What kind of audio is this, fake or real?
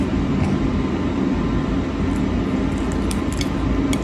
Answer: real